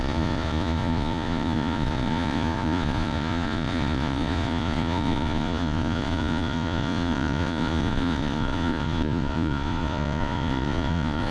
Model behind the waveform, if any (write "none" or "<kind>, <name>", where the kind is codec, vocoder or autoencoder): vocoder, Vocos